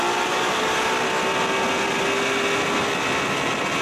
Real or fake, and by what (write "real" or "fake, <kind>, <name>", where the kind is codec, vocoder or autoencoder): real